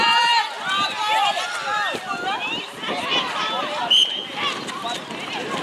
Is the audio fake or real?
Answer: fake